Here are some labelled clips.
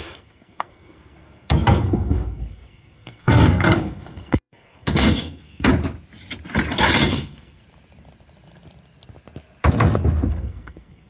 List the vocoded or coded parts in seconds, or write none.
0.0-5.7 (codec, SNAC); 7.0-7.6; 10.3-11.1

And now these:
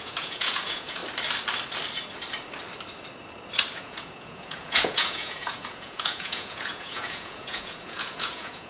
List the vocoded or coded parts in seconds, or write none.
0.0-1.0 (vocoder, Vocos); 3.8-8.7

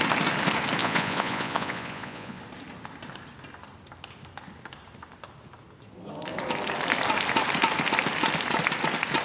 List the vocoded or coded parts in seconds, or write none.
0.8-2.4 (vocoder, Vocos)

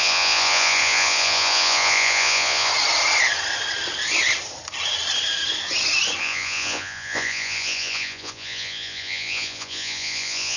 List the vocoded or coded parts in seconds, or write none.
0.0-2.7 (vocoder, Vocos); 6.2-10.6

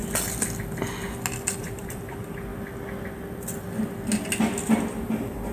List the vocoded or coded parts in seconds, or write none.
1.6-2.5 (vocoder, BigVGAN v2); 4.7-5.5